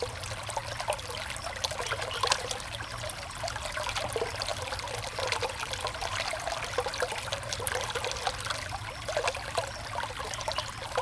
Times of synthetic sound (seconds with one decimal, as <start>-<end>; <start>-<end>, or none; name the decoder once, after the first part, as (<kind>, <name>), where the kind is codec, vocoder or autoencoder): none